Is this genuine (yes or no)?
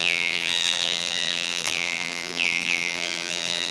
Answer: no